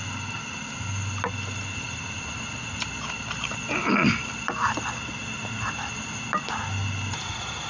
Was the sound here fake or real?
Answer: real